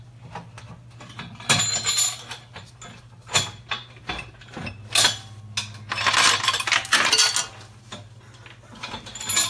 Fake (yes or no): no